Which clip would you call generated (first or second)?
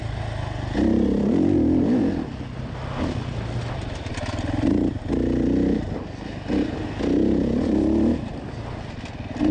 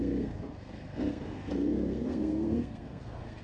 second